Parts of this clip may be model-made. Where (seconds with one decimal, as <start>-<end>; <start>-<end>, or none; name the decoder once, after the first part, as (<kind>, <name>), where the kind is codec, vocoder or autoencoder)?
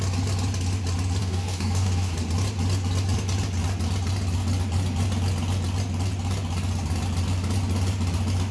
1.2-2.1 (codec, DAC)